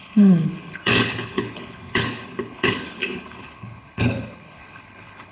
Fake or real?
fake